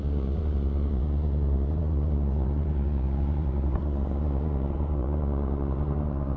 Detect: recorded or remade remade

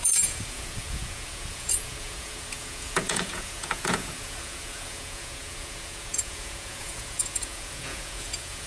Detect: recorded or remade remade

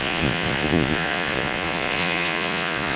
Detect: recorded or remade remade